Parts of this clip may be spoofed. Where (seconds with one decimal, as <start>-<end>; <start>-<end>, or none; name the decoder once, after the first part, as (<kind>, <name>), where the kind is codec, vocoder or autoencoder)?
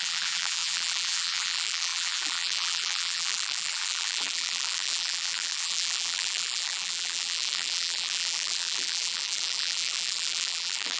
0.0-11.0 (vocoder, BigVGAN v2)